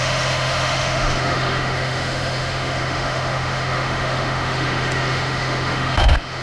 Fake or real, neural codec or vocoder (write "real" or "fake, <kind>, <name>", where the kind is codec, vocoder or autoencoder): fake, autoencoder, DAC-VAE